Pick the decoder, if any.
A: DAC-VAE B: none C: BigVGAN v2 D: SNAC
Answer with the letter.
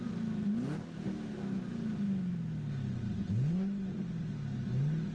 B